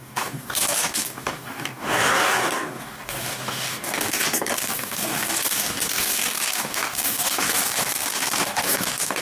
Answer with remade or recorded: remade